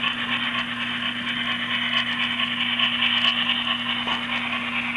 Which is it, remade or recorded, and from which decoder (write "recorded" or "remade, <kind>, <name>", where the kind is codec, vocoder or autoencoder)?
recorded